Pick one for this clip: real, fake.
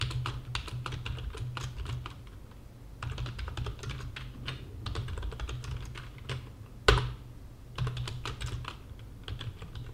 real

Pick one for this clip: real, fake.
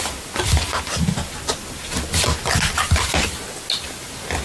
real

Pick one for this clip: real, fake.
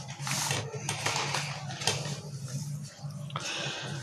real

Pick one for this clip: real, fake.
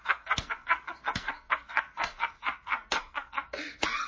fake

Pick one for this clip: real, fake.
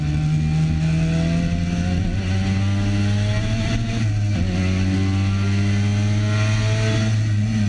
real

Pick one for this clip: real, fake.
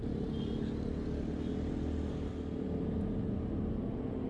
real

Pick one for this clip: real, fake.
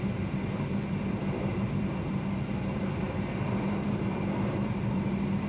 fake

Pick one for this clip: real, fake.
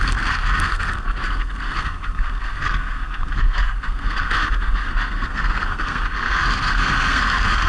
fake